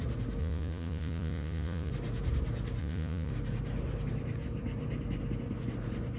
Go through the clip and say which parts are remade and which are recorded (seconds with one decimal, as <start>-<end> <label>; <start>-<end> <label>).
0.0-0.4 recorded; 0.4-1.9 remade; 1.9-2.8 recorded; 2.8-3.3 remade; 3.3-6.2 recorded